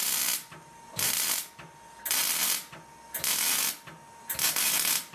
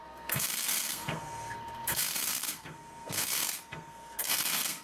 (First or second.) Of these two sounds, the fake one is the second